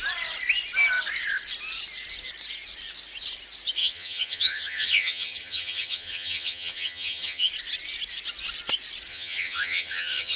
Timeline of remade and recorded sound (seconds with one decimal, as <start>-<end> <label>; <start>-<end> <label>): 0.0-3.8 recorded; 3.8-7.5 remade; 7.5-9.1 recorded; 9.1-10.4 remade